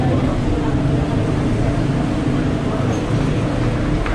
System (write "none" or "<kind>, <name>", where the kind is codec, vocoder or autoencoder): vocoder, BigVGAN v2